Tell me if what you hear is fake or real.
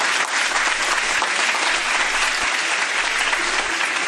real